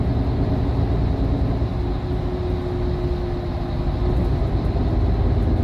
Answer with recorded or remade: recorded